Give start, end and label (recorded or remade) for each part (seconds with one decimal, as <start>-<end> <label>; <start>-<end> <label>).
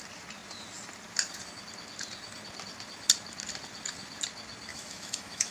0.0-4.7 recorded; 4.7-5.5 remade